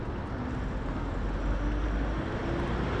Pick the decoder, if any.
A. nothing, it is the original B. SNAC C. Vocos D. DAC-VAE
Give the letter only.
A